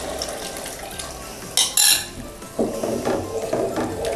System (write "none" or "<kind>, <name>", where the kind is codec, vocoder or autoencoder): none